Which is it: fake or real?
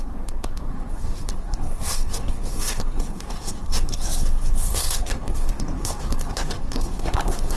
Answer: fake